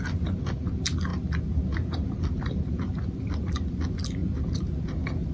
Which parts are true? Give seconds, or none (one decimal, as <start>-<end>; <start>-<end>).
0.0-5.3